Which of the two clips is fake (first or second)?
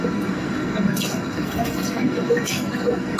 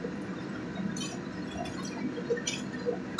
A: first